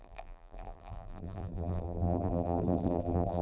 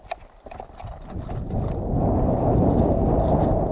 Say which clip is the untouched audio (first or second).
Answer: second